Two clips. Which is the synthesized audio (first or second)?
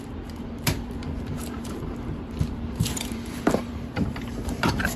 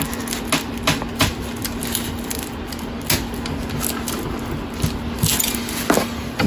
first